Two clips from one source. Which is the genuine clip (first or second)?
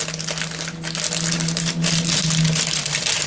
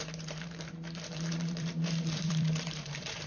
first